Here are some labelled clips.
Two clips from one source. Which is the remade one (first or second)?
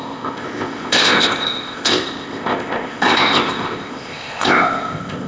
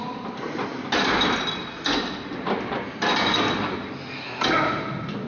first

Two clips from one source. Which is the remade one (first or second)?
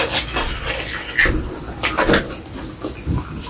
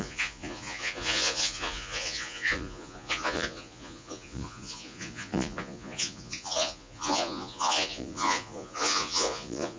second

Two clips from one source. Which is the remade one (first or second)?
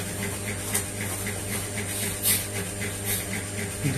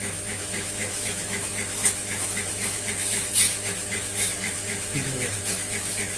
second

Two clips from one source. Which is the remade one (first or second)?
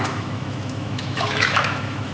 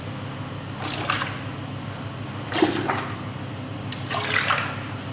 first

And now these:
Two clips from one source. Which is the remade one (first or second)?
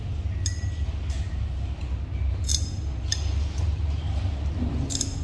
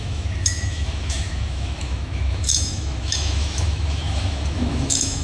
second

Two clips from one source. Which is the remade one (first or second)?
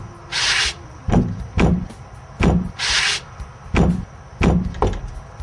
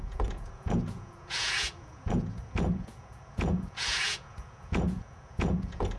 second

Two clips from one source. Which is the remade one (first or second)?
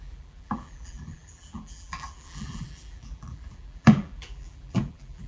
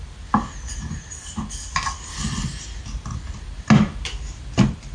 first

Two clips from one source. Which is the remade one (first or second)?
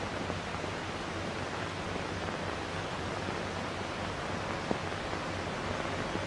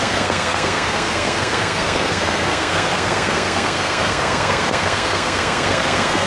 second